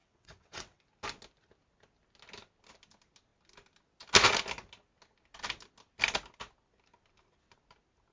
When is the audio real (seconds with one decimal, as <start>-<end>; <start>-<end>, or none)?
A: 0.8-8.1